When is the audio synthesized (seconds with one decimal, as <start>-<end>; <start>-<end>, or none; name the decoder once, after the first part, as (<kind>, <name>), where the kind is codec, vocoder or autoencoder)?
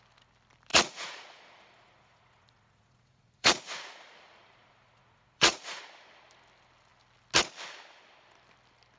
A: 0.7-5.8 (vocoder, Vocos)